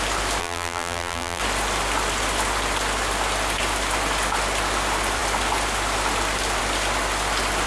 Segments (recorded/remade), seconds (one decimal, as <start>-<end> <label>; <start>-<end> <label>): 0.0-0.4 recorded; 0.4-1.4 remade; 1.4-7.7 recorded